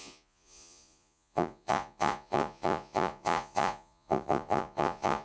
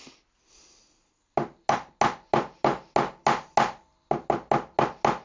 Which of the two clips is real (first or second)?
second